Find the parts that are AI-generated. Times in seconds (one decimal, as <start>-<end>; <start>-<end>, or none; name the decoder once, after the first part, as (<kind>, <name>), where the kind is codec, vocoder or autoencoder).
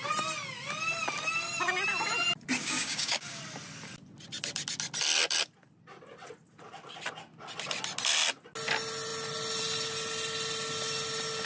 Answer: 2.6-3.4 (codec, DAC)